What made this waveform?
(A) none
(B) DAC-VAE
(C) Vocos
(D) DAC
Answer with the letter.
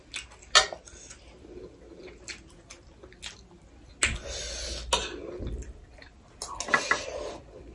A